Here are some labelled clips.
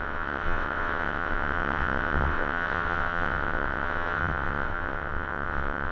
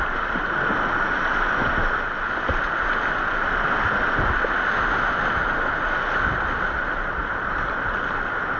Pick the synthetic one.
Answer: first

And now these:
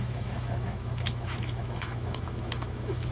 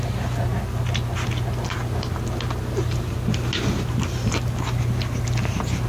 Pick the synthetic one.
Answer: first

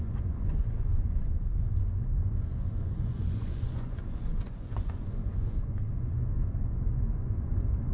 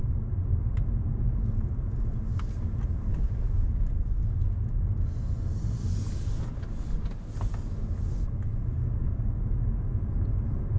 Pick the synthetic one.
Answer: first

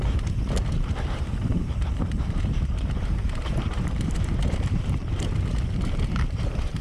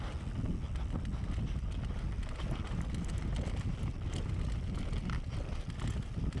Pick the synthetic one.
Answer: first